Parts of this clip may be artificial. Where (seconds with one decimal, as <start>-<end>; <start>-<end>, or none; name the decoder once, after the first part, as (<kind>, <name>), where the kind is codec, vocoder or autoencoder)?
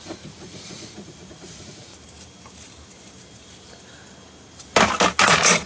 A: 0.0-1.9 (vocoder, Vocos); 5.3-5.7